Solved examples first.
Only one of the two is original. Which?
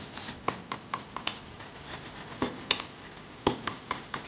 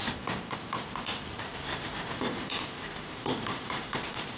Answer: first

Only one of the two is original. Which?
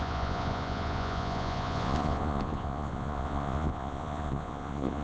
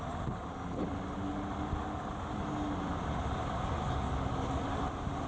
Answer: second